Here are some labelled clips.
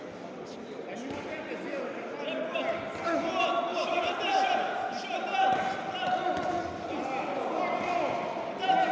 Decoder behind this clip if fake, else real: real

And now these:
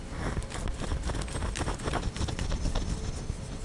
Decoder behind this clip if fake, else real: real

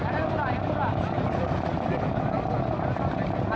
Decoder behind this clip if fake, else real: real